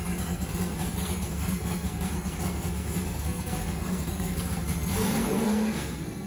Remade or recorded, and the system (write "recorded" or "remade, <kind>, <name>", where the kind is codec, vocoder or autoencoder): remade, codec, SNAC